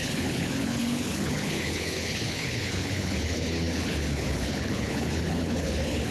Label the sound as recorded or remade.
remade